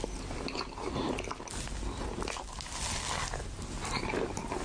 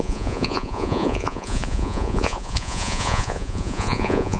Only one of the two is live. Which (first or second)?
first